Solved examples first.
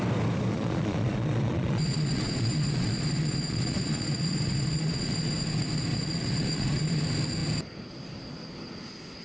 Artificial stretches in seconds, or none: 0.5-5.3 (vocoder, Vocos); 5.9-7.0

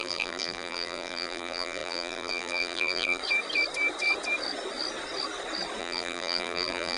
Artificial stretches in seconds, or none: 0.0-3.2 (vocoder, BigVGAN v2); 5.8-7.0

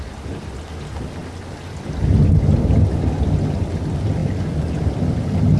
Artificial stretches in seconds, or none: none

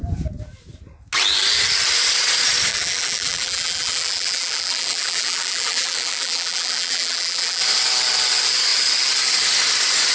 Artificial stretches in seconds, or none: 2.7-7.6 (vocoder, BigVGAN v2)